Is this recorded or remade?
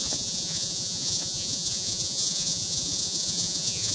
remade